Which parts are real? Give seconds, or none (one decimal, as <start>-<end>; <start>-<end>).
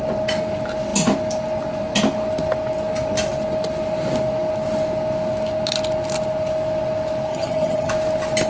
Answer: 0.0-7.3; 7.9-8.5